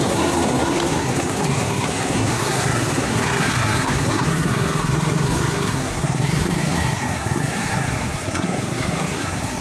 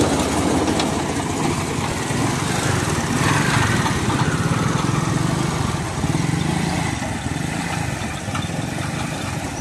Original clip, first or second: second